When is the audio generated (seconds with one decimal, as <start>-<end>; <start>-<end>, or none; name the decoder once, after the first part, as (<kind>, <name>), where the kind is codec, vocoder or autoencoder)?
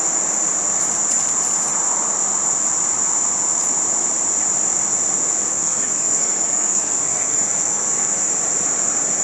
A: 5.5-8.3 (codec, SNAC)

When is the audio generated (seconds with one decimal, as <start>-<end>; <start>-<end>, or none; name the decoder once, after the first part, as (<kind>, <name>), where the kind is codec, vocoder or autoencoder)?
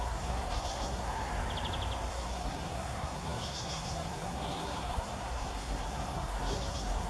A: 0.0-1.3 (codec, SNAC); 2.1-7.1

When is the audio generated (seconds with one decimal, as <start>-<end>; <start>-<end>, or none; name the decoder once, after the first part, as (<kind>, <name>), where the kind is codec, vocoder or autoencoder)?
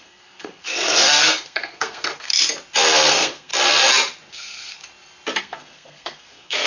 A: 0.0-2.3 (codec, SNAC); 3.1-3.5; 4.3-4.8; 5.4-6.7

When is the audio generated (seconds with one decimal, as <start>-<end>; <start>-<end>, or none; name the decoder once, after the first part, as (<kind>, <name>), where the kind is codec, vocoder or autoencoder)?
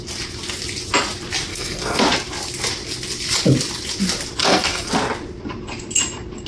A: 1.5-2.0 (codec, SNAC); 4.4-4.9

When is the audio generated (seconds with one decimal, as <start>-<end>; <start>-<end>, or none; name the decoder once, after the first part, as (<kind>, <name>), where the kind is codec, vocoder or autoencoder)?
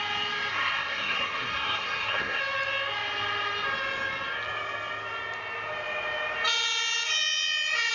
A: 0.5-2.4 (codec, SNAC)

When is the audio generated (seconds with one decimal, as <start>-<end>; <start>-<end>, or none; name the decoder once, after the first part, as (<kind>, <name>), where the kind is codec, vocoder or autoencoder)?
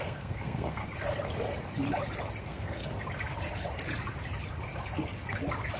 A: 0.0-0.8 (codec, SNAC); 2.4-2.8